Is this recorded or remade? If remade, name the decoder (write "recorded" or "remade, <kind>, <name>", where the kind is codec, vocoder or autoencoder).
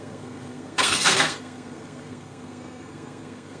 remade, codec, SNAC